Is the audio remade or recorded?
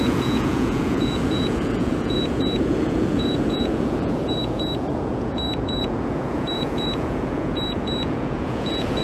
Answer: remade